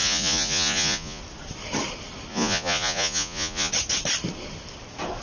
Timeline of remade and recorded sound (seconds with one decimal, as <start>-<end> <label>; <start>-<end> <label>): 0.0-1.2 remade; 1.2-2.3 recorded; 2.3-3.7 remade; 3.7-5.2 recorded